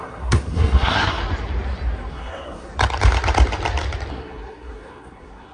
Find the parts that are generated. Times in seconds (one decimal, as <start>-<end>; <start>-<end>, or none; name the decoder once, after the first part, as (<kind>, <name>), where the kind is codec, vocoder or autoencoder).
0.0-1.2 (codec, SNAC); 2.1-2.7; 4.1-5.5